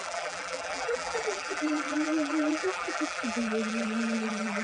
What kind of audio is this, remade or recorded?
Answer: remade